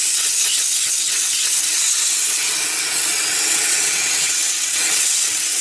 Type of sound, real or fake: fake